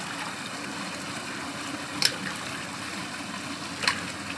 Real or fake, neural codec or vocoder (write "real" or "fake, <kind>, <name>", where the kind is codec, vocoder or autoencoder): real